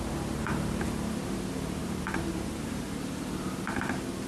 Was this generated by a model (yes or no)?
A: yes